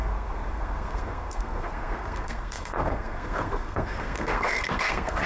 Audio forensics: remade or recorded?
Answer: remade